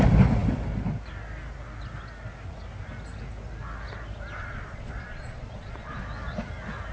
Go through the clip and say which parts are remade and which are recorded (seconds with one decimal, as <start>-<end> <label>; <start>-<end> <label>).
0.0-4.4 recorded; 4.4-6.0 remade; 6.0-6.9 recorded